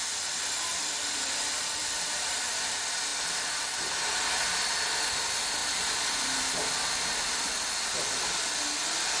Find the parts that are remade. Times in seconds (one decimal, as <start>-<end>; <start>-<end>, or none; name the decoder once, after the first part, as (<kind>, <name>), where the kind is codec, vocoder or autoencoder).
0.7-2.6 (vocoder, BigVGAN v2); 3.1-3.9

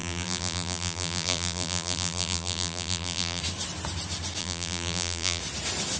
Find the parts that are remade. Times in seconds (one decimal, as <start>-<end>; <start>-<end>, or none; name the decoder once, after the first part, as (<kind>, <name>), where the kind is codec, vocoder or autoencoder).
0.0-3.4 (vocoder, BigVGAN v2); 4.4-5.4

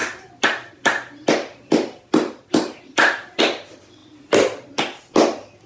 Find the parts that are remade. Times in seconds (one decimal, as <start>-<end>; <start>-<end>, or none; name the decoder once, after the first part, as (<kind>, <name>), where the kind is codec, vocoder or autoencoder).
0.0-3.4 (vocoder, BigVGAN v2); 4.0-5.1

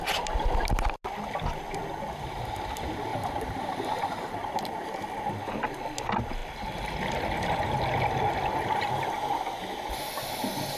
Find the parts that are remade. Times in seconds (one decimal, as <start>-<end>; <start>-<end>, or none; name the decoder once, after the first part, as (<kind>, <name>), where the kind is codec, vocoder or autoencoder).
3.1-5.3 (vocoder, BigVGAN v2)

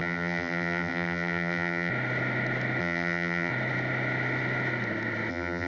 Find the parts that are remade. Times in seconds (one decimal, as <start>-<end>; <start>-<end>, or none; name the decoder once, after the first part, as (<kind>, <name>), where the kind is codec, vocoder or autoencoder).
0.0-1.9 (vocoder, BigVGAN v2); 2.8-3.5; 5.3-5.7

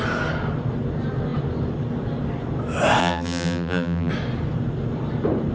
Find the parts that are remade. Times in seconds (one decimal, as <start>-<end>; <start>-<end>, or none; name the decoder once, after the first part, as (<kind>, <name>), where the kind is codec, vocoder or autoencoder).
3.0-4.1 (vocoder, BigVGAN v2)